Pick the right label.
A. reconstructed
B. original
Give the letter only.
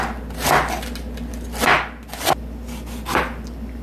B